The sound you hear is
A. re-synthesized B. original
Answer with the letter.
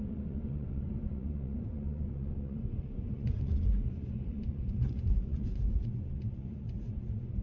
A